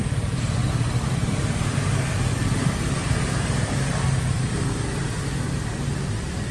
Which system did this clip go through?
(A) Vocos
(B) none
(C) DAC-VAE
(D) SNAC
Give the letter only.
B